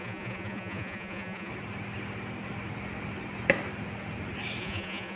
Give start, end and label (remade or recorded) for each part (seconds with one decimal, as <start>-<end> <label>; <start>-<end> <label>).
0.0-1.5 remade; 1.5-4.6 recorded; 4.6-5.2 remade